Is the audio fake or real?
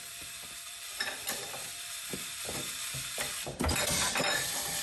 fake